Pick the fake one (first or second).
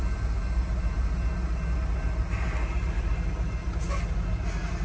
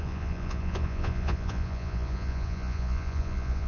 second